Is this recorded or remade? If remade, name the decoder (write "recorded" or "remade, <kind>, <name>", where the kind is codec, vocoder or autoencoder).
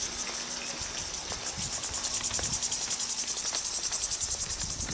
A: recorded